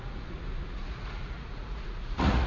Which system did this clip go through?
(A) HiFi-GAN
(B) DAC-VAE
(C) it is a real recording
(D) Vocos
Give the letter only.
D